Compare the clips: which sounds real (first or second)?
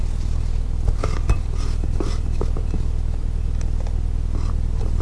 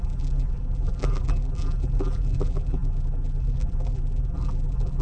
first